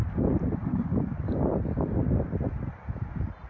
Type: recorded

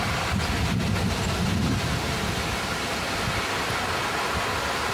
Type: recorded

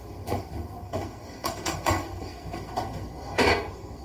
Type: remade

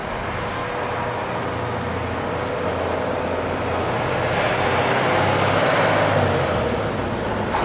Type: recorded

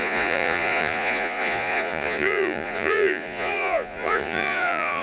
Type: remade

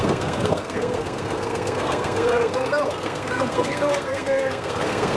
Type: remade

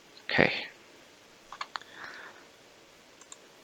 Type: recorded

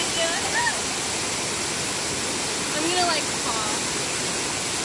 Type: recorded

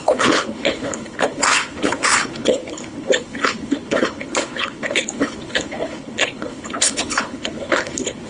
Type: remade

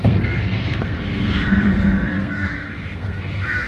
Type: remade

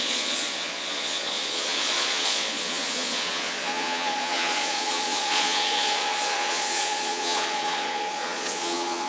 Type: remade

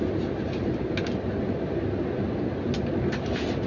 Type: recorded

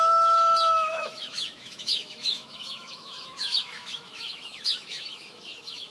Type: remade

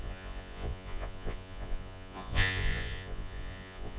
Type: remade